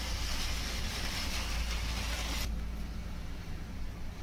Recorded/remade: recorded